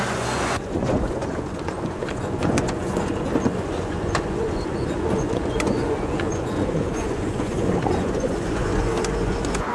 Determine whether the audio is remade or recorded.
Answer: remade